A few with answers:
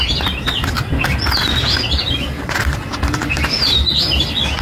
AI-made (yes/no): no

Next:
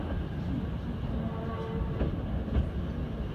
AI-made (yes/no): no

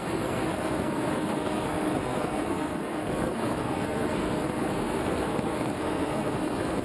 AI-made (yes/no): yes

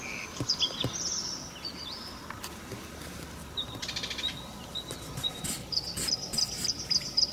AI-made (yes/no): no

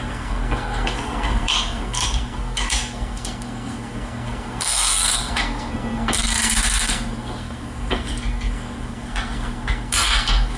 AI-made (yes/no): yes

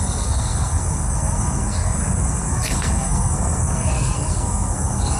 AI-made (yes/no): yes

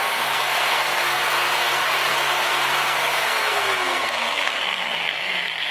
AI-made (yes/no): yes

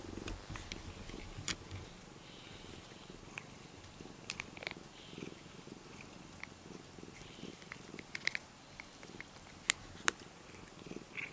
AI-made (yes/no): no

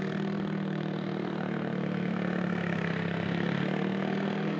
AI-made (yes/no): yes